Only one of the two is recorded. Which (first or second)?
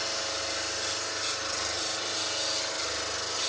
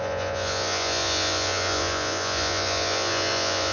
first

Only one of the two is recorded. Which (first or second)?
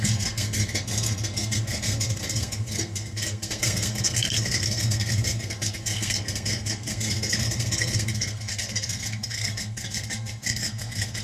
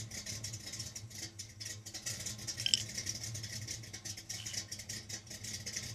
second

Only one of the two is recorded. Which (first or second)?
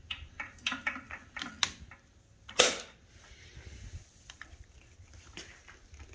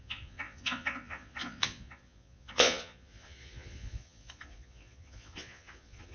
first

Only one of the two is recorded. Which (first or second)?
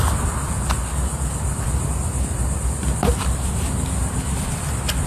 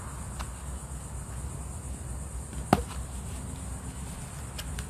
second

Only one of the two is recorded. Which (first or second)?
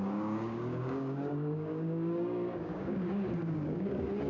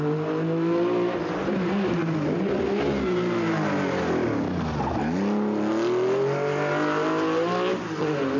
second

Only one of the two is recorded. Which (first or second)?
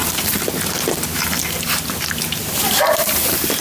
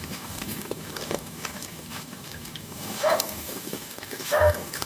first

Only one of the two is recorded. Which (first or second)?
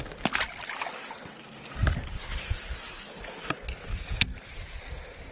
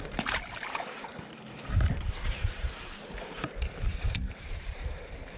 first